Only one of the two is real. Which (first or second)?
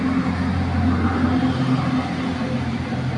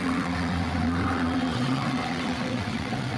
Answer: first